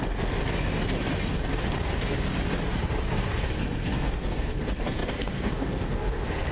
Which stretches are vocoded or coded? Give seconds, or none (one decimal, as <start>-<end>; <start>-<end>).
0.0-0.4; 3.1-6.5